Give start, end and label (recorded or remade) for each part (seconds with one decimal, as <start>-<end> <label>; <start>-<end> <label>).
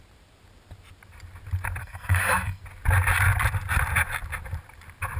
0.0-1.8 recorded; 1.8-2.6 remade; 2.6-5.2 recorded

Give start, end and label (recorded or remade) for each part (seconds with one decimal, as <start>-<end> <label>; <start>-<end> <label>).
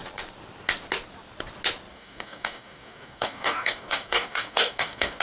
0.0-1.9 recorded; 1.9-5.2 remade